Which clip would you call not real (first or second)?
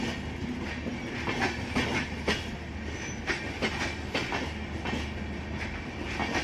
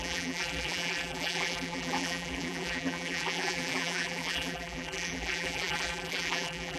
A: second